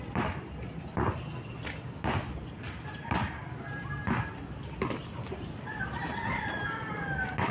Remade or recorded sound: recorded